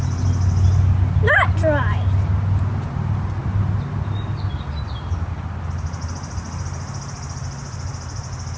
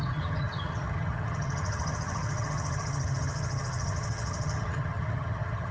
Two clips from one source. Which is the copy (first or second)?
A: second